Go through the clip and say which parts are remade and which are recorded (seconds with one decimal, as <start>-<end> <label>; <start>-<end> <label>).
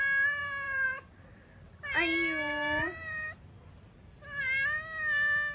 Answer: 0.0-0.4 recorded; 0.4-1.5 remade; 1.5-2.8 recorded; 2.8-3.7 remade; 3.7-5.5 recorded